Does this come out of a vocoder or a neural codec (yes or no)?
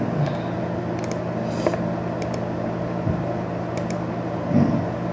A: no